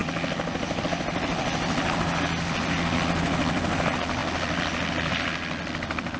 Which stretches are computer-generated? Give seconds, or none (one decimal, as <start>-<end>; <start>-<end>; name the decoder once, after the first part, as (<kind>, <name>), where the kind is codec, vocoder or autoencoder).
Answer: none